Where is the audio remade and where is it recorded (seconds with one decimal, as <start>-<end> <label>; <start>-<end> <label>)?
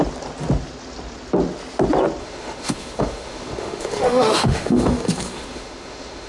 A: 0.0-2.2 recorded; 2.2-6.3 remade